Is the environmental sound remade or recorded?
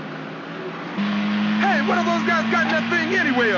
recorded